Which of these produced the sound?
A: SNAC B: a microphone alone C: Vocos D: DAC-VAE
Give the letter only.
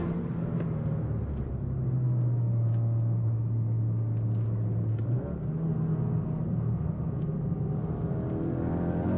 B